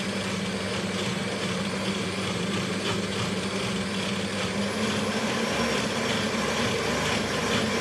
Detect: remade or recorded recorded